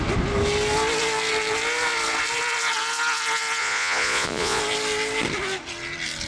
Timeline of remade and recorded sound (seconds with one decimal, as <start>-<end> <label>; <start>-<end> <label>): 0.0-3.6 recorded; 3.6-4.6 remade; 4.6-6.3 recorded